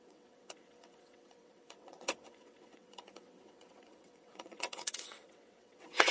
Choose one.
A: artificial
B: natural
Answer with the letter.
A